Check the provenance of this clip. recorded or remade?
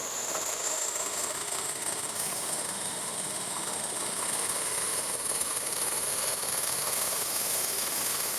remade